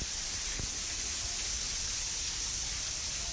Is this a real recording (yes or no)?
yes